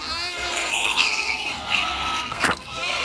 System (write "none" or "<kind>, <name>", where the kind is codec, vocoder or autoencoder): codec, SNAC